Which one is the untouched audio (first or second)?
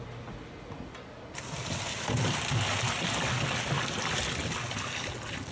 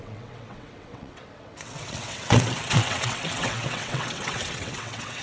first